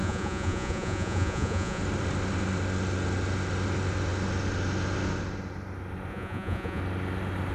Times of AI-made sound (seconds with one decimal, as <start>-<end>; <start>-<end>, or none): 0.0-1.8; 6.1-6.8

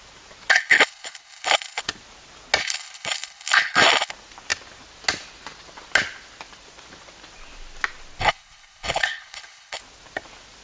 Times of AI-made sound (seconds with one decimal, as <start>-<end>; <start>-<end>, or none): 0.5-1.8; 2.6-4.1; 8.2-9.8

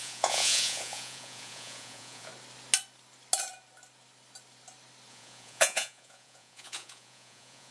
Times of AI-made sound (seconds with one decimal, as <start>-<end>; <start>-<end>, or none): 0.0-2.3; 5.1-7.7